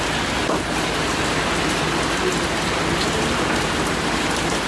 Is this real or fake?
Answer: real